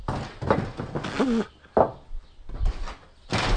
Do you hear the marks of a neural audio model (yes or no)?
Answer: no